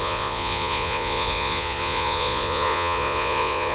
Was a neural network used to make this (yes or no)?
yes